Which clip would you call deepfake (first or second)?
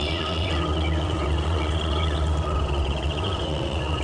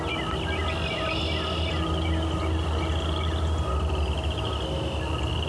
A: first